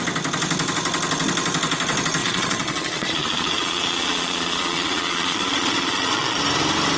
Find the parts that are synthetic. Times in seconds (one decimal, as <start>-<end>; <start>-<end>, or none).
2.2-6.4